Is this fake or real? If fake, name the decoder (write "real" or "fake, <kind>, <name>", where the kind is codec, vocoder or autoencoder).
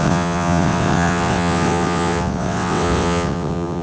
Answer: fake, vocoder, WaveNeXt